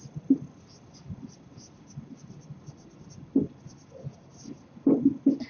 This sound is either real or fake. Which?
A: real